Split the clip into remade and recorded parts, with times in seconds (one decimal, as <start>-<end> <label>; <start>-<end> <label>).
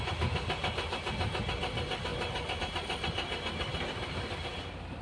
0.0-5.0 recorded